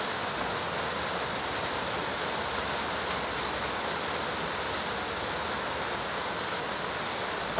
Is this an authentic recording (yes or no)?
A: yes